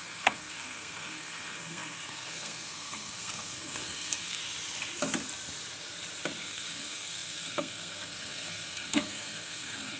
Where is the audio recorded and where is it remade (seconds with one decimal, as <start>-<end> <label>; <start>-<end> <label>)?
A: 0.0-4.4 remade; 4.4-6.4 recorded; 6.4-10.0 remade